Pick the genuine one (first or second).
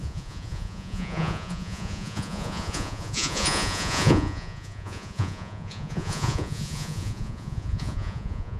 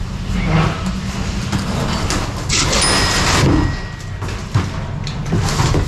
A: second